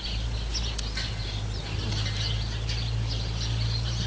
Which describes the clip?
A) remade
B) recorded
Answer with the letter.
B